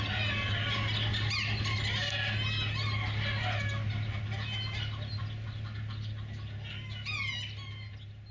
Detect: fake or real real